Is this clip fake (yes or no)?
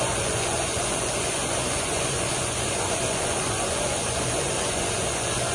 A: yes